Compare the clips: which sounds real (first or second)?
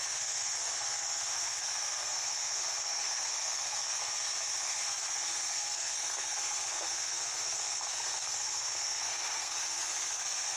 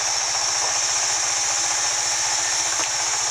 second